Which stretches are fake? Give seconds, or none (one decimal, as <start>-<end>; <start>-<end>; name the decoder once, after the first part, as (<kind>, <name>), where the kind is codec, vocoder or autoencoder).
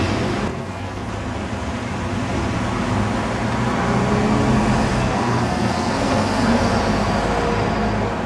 0.5-1.1 (codec, SNAC); 4.9-6.6